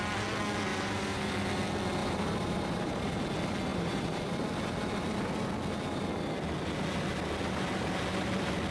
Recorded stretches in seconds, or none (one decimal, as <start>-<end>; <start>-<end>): 0.0-0.7; 1.3-2.0; 3.1-3.7; 4.3-8.7